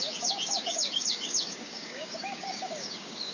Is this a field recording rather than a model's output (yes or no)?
no